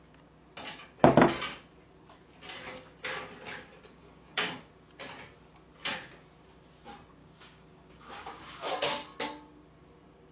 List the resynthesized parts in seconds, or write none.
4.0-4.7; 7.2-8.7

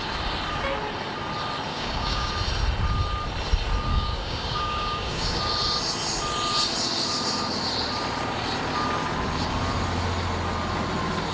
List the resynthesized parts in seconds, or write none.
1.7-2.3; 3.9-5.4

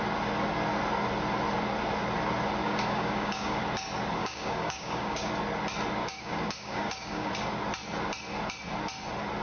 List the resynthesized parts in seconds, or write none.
2.6-3.6; 4.2-5.3; 6.0-7.3

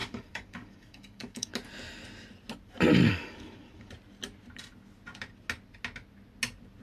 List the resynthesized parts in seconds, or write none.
0.0-1.5; 3.1-3.9

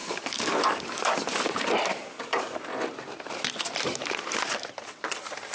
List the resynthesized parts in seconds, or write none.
0.0-1.5; 1.9-2.7

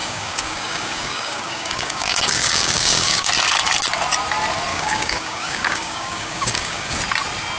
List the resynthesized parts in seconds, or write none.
0.0-3.3; 4.7-7.0

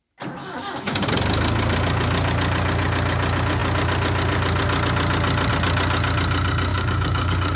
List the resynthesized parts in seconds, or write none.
0.4-1.1; 6.7-7.6